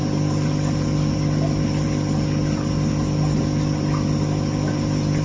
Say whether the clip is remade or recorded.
recorded